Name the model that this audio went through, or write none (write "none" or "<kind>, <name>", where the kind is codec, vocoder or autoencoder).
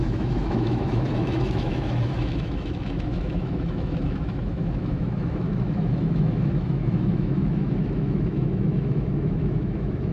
autoencoder, DAC-VAE